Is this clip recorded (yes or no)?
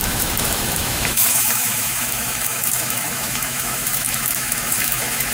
no